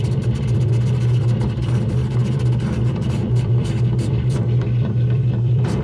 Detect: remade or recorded remade